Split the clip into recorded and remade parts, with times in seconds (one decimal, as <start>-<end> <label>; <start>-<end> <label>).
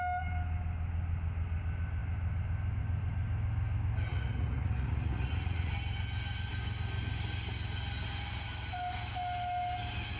0.0-4.1 recorded; 4.1-5.7 remade; 5.7-10.2 recorded